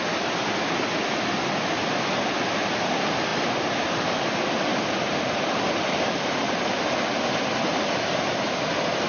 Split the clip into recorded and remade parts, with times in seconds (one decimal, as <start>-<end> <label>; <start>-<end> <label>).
0.0-9.1 recorded